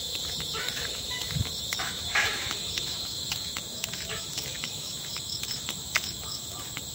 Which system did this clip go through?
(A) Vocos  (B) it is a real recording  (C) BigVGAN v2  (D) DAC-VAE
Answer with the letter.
D